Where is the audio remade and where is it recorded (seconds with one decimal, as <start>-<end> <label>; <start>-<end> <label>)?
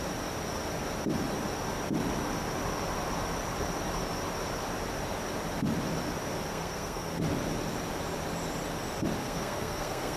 0.0-6.5 recorded; 6.5-7.2 remade; 7.2-9.2 recorded; 9.2-10.2 remade